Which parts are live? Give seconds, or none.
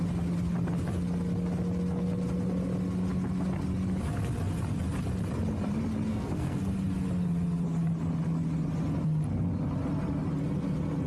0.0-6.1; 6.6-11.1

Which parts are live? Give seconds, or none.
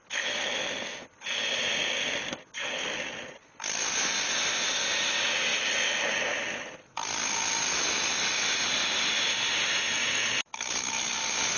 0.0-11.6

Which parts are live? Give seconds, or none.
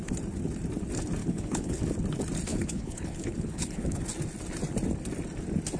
0.0-1.2; 1.8-2.5; 4.0-5.8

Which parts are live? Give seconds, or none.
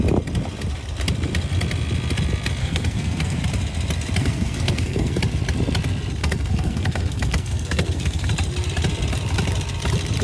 0.0-2.6; 3.4-4.2; 5.2-6.2; 8.3-10.2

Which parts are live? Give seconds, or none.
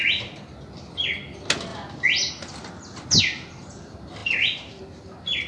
0.0-5.5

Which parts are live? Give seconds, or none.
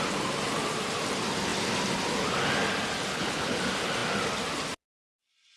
0.0-3.1; 3.6-5.6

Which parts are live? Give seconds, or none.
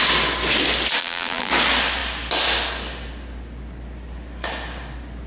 0.0-1.0; 1.5-5.3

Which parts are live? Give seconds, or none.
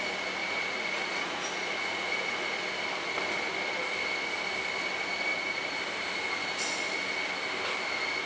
0.0-0.4; 2.6-5.3; 5.8-8.3